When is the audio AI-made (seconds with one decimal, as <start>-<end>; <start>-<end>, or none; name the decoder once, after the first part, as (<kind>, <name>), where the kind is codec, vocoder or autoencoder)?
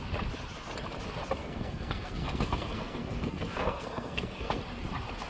1.4-4.6 (codec, SNAC)